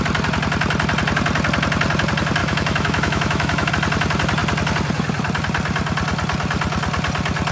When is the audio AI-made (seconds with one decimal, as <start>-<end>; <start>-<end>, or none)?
2.4-3.7